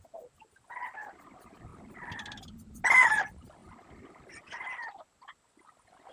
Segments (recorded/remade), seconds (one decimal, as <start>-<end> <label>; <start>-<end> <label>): 0.0-6.1 recorded